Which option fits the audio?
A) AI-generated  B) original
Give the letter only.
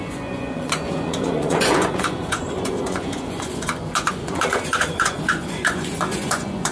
A